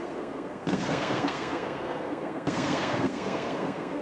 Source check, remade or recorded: remade